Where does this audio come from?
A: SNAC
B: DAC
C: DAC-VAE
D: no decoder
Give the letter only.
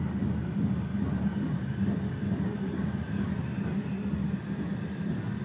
D